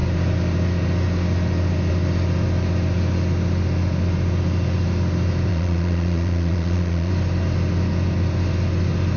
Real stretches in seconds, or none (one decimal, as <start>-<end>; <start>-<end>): 0.0-5.5; 7.1-9.2